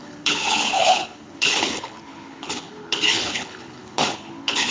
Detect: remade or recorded remade